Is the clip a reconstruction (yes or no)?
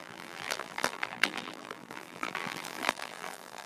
yes